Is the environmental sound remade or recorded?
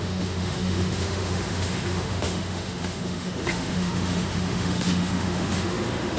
remade